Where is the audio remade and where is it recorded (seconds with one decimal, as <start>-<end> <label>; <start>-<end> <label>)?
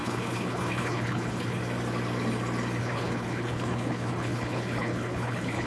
0.0-1.6 remade; 1.6-2.8 recorded; 2.8-5.7 remade